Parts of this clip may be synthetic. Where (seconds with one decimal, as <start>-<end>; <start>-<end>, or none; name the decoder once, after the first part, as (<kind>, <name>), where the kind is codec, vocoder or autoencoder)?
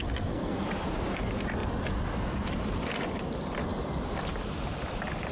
0.0-0.6 (codec, SNAC)